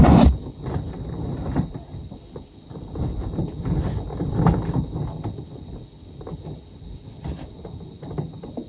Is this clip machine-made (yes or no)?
no